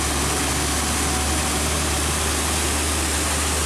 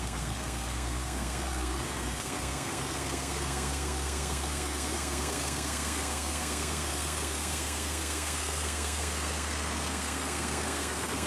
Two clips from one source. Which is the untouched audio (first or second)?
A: first